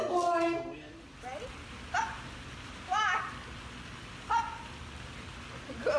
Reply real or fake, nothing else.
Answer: real